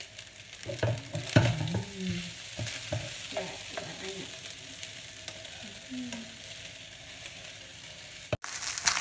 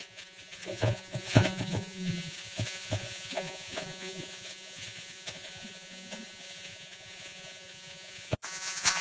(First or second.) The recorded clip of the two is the first